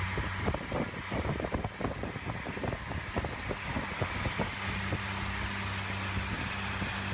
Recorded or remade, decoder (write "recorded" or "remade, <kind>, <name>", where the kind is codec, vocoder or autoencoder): recorded